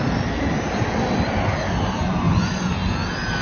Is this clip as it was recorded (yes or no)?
yes